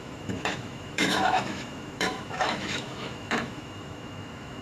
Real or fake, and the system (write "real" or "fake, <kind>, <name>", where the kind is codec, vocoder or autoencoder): fake, autoencoder, DAC-VAE